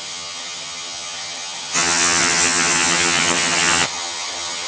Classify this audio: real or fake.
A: fake